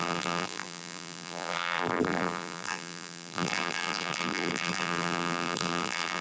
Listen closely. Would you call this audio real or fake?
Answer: fake